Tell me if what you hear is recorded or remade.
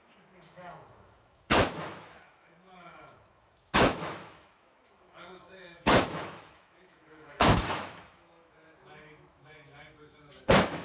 remade